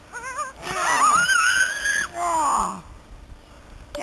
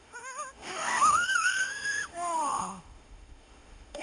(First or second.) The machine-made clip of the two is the second